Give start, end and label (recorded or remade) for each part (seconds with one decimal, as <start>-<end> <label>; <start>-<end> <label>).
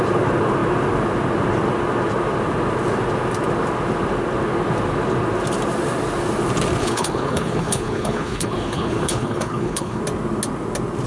0.0-6.8 recorded; 6.8-10.0 remade; 10.0-11.1 recorded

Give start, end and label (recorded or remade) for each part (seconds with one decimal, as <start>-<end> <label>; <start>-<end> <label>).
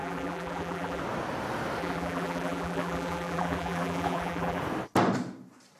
0.0-1.0 remade; 1.0-1.8 recorded; 1.8-4.6 remade; 4.6-5.8 recorded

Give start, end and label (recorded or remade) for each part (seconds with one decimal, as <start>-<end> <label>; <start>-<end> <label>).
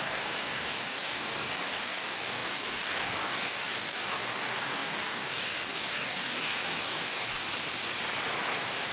0.0-7.5 remade; 7.5-8.4 recorded; 8.4-8.9 remade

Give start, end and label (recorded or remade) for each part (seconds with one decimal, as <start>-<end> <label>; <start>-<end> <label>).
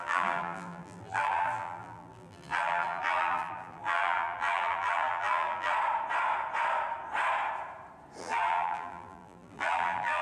0.0-5.7 remade; 5.7-8.2 recorded; 8.2-10.2 remade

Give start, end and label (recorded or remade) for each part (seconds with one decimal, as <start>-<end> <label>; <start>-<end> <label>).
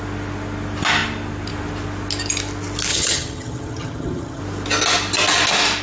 0.0-2.9 recorded; 2.9-4.4 remade; 4.4-5.8 recorded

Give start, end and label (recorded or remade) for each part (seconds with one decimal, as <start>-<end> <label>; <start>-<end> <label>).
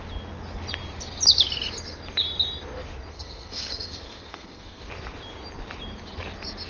0.0-3.1 recorded; 3.1-4.9 remade; 4.9-6.7 recorded